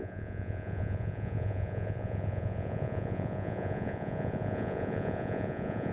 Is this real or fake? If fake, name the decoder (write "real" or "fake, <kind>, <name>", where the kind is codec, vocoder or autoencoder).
fake, vocoder, Vocos